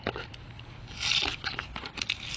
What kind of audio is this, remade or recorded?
recorded